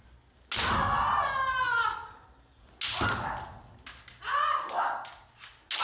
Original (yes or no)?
yes